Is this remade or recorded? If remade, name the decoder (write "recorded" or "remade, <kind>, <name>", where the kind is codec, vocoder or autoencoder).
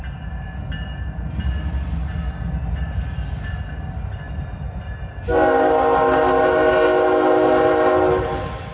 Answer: recorded